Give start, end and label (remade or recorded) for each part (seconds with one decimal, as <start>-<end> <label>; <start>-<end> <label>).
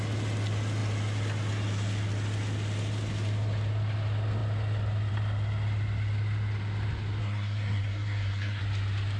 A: 0.0-7.2 recorded; 7.2-8.6 remade; 8.6-9.2 recorded